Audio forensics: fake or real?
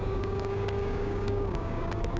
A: fake